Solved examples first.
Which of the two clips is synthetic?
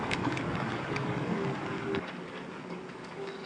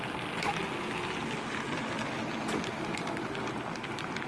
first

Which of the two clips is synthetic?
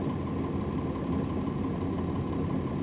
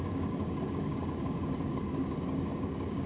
second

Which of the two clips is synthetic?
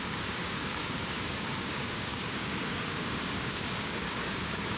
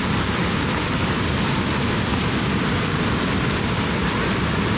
first